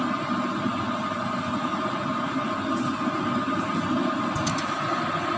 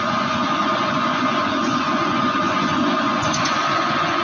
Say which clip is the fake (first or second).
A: second